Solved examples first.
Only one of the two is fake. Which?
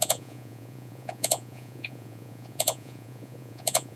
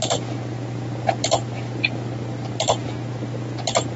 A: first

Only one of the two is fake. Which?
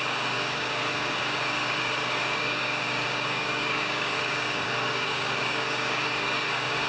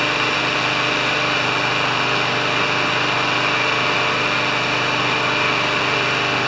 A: first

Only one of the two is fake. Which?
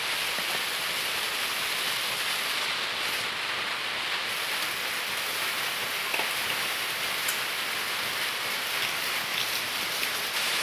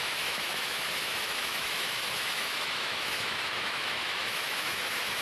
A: second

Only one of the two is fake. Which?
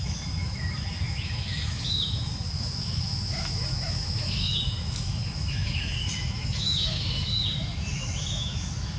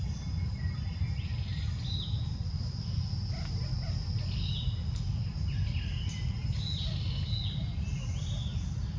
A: first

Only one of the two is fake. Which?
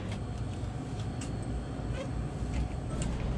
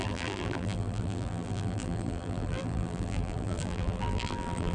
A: second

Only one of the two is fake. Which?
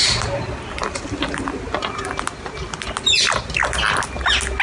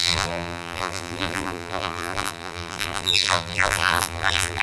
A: second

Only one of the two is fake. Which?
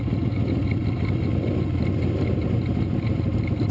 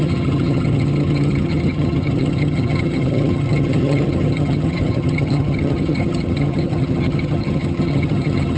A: second